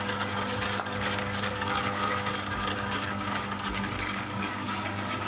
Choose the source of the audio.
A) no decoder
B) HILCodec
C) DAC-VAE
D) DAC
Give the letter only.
D